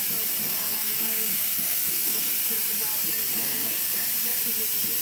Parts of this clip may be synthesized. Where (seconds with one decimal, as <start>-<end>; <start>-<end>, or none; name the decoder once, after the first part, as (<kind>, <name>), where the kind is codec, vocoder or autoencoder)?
0.4-2.3 (codec, SNAC); 3.4-3.9